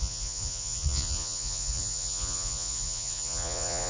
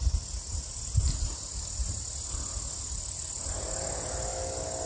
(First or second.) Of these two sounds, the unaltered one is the second